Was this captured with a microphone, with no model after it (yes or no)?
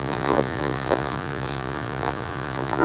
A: no